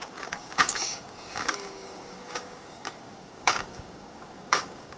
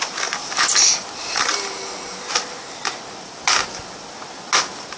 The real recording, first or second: second